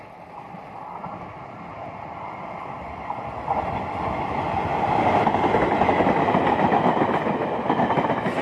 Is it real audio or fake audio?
real